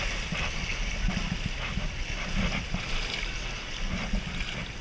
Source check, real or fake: real